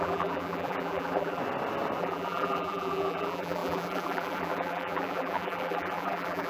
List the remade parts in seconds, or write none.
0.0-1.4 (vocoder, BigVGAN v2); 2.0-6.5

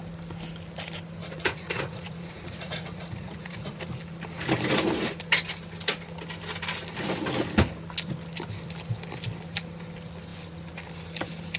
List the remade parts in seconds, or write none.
1.2-3.8 (vocoder, Vocos)

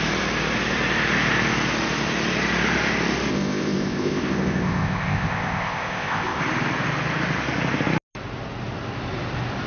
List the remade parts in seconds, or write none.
3.3-6.4 (codec, ZipCodec)

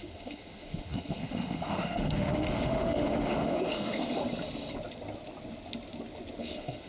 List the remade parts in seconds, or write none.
0.0-4.2 (autoencoder, DAC-VAE); 6.4-6.9

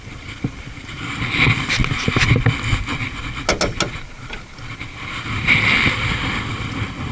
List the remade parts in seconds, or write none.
0.0-1.8 (vocoder, BigVGAN v2); 4.2-7.1

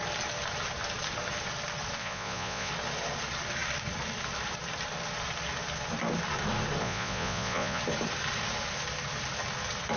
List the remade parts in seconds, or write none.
2.0-2.7 (vocoder, Vocos); 6.8-7.8

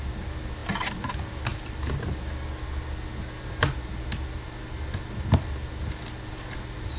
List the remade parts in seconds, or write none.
none

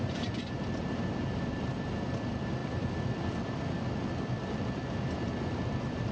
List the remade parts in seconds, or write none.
0.0-6.1 (vocoder, BigVGAN v2)